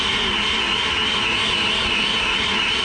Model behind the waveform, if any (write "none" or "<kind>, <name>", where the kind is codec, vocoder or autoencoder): none